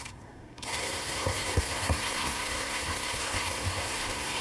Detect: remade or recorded remade